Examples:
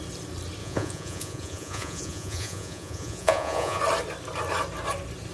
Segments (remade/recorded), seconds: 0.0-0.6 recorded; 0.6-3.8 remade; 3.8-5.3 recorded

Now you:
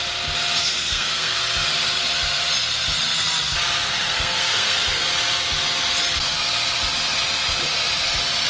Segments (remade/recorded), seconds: 0.0-0.6 recorded; 0.6-1.4 remade; 1.4-3.9 recorded; 3.9-5.0 remade; 5.0-8.5 recorded

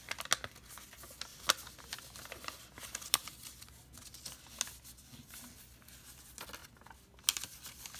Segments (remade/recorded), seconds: 0.0-8.0 recorded

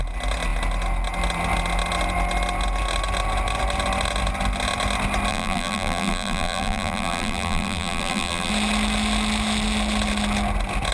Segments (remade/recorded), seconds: 0.0-5.3 recorded; 5.3-8.5 remade; 8.5-10.9 recorded

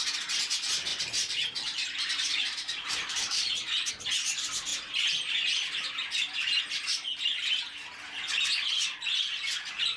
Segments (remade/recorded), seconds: 0.0-0.9 recorded; 0.9-3.9 remade; 3.9-10.0 recorded

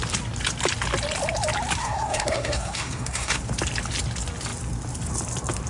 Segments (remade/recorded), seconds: 0.0-1.8 recorded; 1.8-3.4 remade; 3.4-5.7 recorded

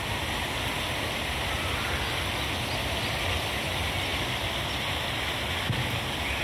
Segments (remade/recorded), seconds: 0.0-6.4 recorded

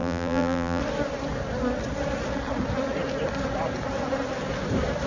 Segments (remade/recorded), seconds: 0.0-0.8 remade; 0.8-5.1 recorded